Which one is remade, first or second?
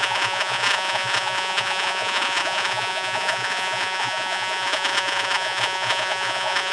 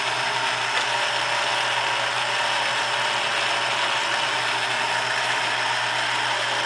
first